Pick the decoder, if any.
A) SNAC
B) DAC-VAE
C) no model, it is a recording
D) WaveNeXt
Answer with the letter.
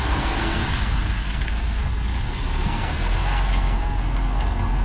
A